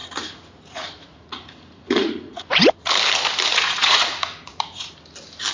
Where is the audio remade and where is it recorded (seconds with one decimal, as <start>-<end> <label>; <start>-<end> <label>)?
0.0-2.9 remade; 2.9-3.5 recorded; 3.5-4.9 remade; 4.9-5.5 recorded